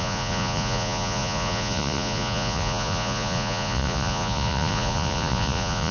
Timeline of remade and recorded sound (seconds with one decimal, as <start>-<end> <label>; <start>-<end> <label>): 0.0-5.9 remade